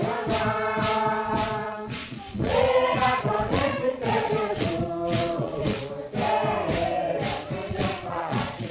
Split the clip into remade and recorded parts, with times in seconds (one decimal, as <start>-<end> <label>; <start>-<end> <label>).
0.0-1.6 recorded; 1.6-5.9 remade; 5.9-7.6 recorded; 7.6-8.7 remade